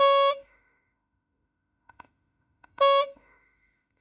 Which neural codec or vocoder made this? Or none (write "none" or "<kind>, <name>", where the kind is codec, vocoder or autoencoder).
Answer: autoencoder, DAC-VAE